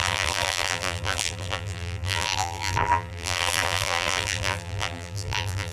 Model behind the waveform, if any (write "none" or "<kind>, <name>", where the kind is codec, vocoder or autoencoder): vocoder, BigVGAN v2